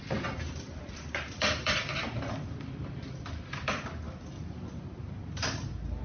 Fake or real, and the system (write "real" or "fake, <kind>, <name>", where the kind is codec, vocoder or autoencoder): real